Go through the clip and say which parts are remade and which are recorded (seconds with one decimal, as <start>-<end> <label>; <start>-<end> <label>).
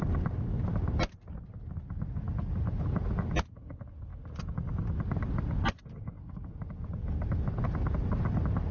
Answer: 0.0-8.7 recorded